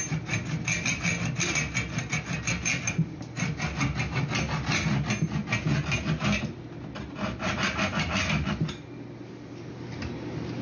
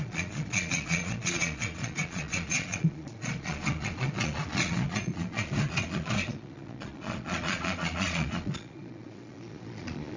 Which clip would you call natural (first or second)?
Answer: first